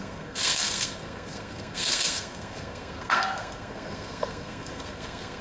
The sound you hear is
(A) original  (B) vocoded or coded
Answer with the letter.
B